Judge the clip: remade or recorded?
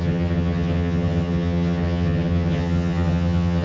remade